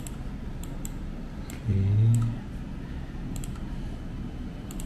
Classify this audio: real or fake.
real